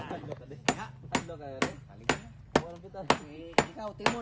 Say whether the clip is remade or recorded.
recorded